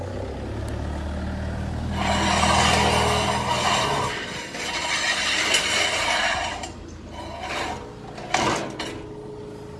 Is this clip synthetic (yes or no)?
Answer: no